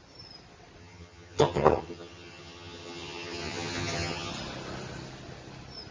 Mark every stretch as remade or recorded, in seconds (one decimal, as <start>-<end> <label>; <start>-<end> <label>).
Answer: 0.0-0.8 recorded; 0.8-4.3 remade; 4.3-5.9 recorded